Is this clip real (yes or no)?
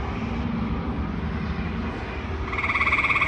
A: yes